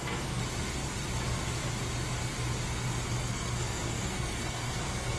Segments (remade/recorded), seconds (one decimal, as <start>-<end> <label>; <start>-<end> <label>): 0.0-0.4 remade; 0.4-3.2 recorded; 3.2-5.2 remade